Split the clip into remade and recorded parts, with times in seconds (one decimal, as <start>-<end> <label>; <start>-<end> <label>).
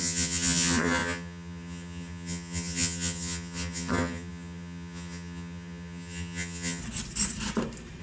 0.0-6.8 remade; 6.8-8.0 recorded